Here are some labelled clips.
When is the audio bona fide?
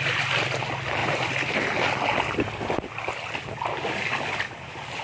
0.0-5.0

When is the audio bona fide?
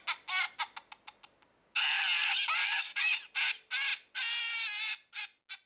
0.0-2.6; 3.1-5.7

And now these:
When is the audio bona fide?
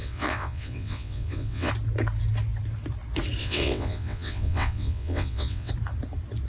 1.7-3.4; 5.7-6.5